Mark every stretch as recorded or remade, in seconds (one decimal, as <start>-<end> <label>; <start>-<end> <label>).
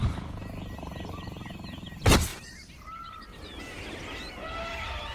0.0-5.1 recorded